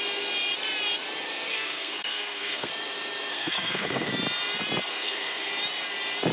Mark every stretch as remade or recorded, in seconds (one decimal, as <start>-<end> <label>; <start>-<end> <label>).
0.0-1.5 recorded; 1.5-2.7 remade; 2.7-3.3 recorded; 3.3-4.1 remade; 4.1-4.9 recorded; 4.9-5.5 remade; 5.5-6.3 recorded